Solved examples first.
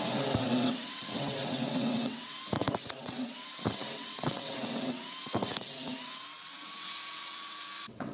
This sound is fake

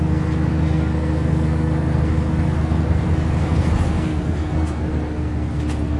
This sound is fake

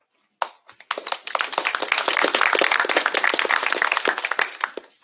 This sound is real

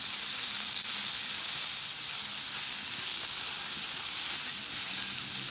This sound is real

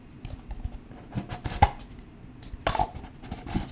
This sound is real